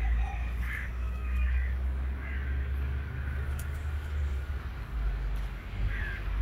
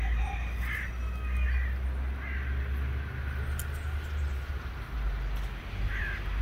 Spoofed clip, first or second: first